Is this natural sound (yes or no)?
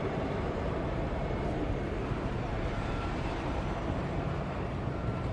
no